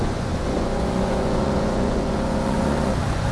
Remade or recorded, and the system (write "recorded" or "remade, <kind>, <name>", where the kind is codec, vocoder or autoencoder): remade, vocoder, Vocos